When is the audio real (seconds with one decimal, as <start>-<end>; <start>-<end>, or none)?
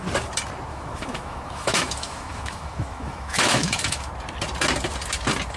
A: 0.0-0.7; 4.1-5.6